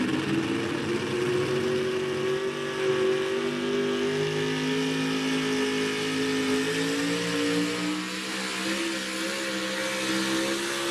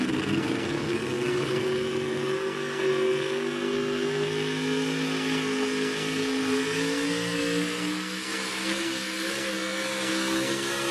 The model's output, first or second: second